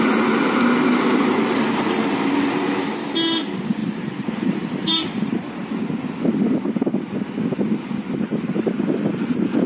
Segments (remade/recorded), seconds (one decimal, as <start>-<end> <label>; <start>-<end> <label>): 0.0-3.8 recorded; 3.8-6.3 remade; 6.3-9.7 recorded